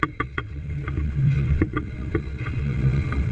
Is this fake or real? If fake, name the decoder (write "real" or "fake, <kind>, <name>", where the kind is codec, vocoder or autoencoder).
fake, vocoder, WaveNeXt